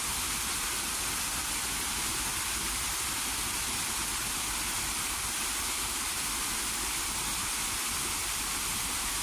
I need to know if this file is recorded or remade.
recorded